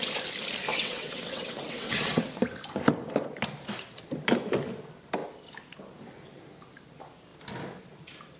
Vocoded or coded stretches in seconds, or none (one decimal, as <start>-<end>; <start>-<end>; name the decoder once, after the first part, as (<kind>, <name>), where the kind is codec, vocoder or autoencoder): 0.7-2.4 (vocoder, WaveNeXt)